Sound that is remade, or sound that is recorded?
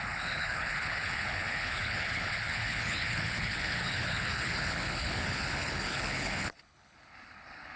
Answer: remade